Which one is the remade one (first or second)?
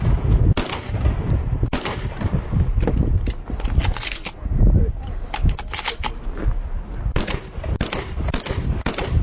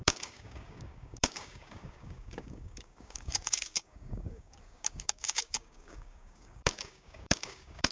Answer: second